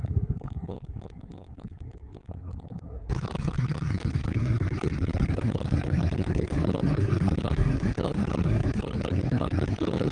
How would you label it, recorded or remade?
remade